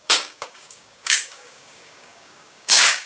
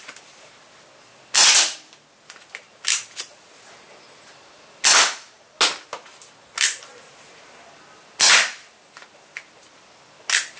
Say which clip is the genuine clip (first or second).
second